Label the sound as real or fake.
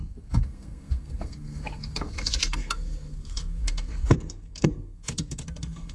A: fake